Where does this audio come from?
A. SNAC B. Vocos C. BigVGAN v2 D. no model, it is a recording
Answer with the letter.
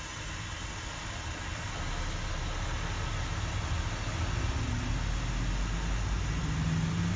D